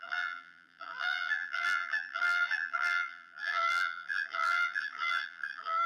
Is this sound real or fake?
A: fake